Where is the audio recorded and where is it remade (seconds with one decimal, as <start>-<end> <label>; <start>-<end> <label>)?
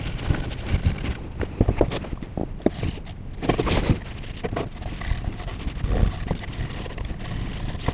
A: 0.0-7.9 recorded